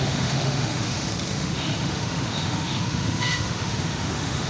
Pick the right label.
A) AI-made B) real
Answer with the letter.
A